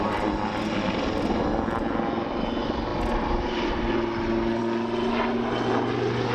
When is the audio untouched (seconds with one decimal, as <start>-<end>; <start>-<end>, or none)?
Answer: 0.0-6.3